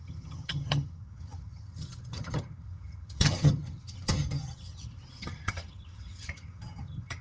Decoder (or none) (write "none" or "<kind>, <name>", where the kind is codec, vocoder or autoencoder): vocoder, HiFi-GAN